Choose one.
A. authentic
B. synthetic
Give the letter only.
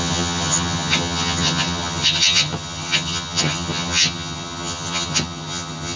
B